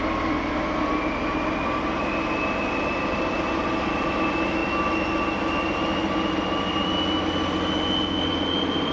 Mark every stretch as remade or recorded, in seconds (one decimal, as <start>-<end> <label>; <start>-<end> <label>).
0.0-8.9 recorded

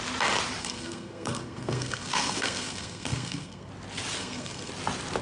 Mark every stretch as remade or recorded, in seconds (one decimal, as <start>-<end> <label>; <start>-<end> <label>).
0.0-0.6 recorded; 0.6-3.7 remade; 3.7-4.2 recorded; 4.2-4.7 remade; 4.7-5.2 recorded

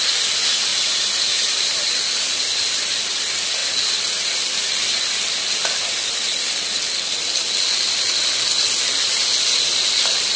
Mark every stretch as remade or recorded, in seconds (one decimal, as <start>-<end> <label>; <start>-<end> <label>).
0.0-0.7 recorded; 0.7-2.3 remade; 2.3-10.4 recorded

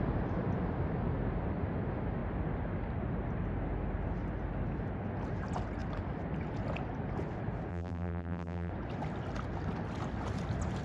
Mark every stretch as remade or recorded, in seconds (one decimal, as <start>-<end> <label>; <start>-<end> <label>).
0.0-7.7 recorded; 7.7-8.7 remade; 8.7-10.8 recorded

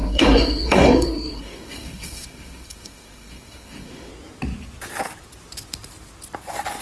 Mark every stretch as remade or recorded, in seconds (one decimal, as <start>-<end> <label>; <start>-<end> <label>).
0.0-4.1 remade; 4.1-6.8 recorded